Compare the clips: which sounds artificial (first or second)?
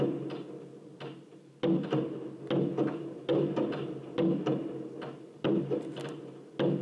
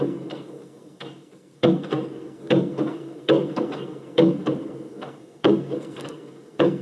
second